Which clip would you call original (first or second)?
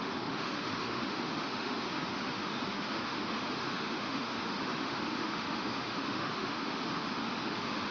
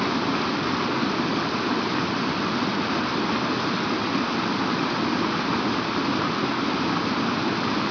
second